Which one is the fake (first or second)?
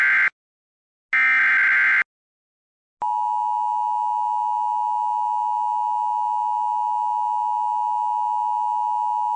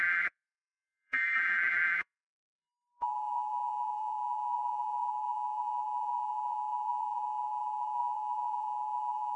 second